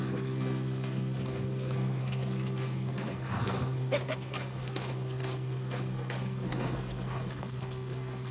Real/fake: fake